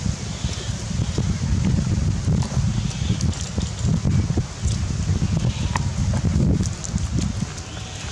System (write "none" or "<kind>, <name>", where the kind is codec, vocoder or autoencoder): none